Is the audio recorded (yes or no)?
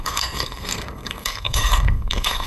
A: no